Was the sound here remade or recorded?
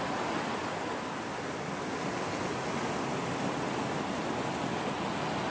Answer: recorded